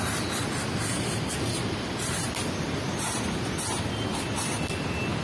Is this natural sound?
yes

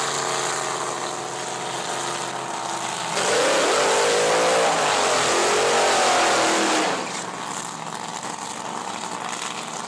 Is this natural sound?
yes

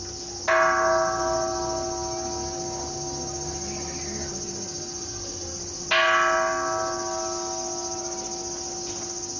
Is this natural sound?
yes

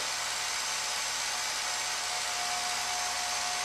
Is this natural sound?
yes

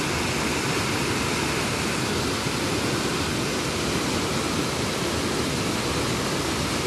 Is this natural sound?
yes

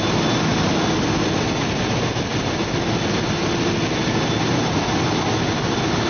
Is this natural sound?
yes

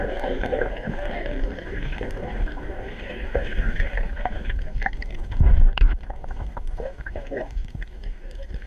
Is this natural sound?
no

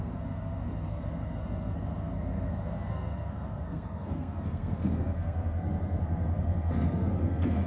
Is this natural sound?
no